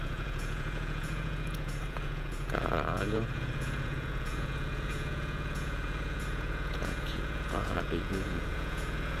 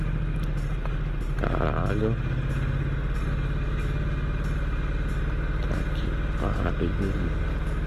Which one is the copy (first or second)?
first